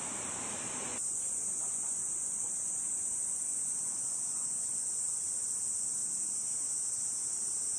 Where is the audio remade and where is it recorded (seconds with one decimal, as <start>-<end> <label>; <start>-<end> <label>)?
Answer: 0.0-0.9 recorded; 0.9-5.6 remade; 5.6-7.8 recorded